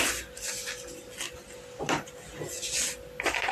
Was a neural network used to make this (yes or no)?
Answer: no